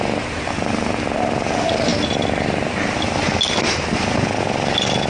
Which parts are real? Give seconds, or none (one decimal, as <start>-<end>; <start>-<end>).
0.0-5.1